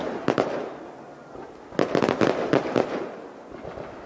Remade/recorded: recorded